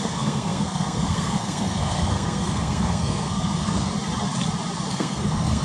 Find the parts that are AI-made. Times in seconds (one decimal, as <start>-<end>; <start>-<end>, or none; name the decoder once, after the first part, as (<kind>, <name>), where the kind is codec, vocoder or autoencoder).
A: 0.0-3.9 (codec, SNAC); 4.9-5.6